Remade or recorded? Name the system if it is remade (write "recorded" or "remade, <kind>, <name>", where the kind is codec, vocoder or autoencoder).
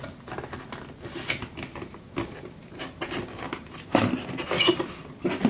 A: recorded